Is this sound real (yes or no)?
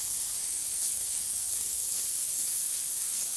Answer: no